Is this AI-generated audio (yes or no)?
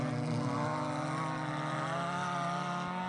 no